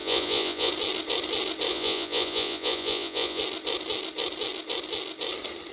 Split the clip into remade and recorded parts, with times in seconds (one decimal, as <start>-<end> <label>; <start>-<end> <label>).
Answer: 0.0-0.7 remade; 0.7-1.7 recorded; 1.7-3.4 remade; 3.4-5.7 recorded